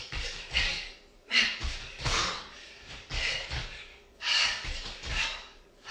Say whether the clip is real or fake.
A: fake